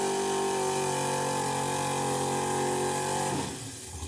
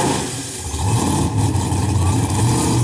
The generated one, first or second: second